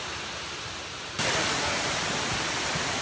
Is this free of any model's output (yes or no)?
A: yes